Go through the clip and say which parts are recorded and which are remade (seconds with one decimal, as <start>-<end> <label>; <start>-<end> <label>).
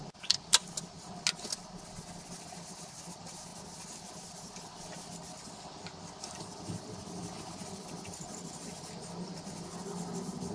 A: 0.0-10.5 recorded